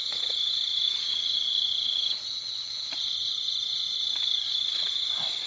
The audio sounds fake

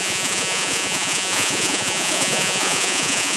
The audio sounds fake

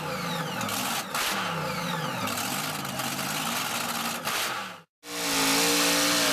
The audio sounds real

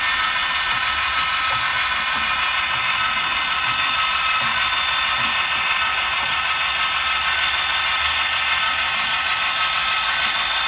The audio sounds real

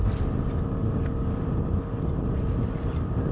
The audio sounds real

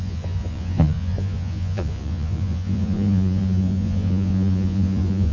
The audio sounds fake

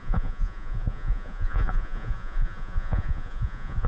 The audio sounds fake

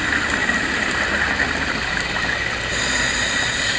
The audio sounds real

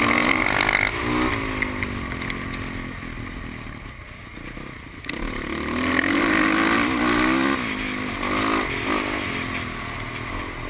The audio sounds real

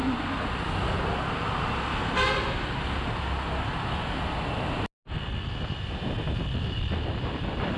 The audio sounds real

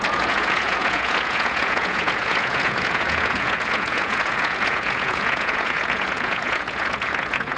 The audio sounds fake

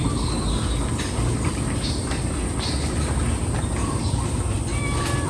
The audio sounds real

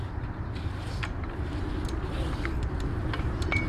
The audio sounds real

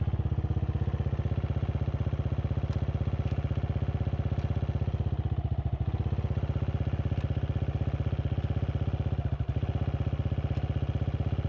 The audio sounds real